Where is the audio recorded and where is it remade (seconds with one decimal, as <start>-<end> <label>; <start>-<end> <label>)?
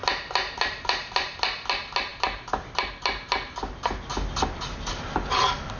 0.0-5.8 recorded